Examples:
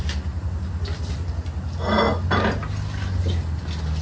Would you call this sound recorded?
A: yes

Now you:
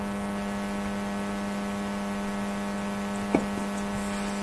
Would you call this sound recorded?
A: yes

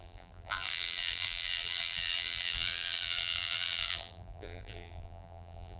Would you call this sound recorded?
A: no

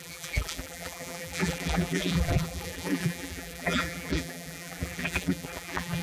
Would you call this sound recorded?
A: no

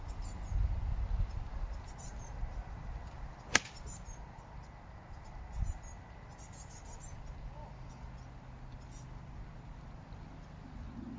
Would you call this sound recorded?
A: yes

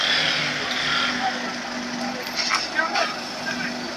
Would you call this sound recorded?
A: yes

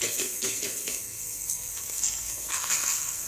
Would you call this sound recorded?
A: no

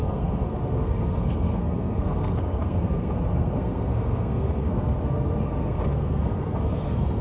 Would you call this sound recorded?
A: no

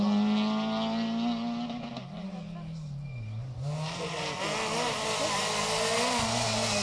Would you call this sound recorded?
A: yes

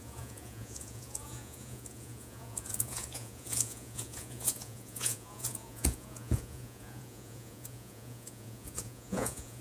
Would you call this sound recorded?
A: no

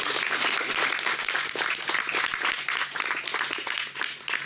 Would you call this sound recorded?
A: yes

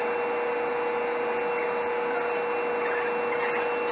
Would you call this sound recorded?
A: yes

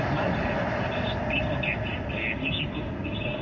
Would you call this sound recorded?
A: yes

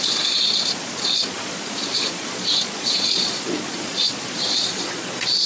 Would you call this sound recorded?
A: no